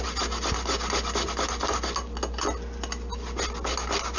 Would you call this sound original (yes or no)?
yes